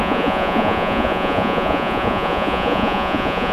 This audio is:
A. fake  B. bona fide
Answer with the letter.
A